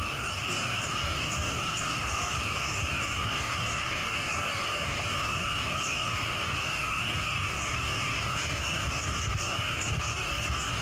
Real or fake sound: fake